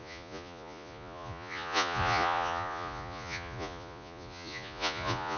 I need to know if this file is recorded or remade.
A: remade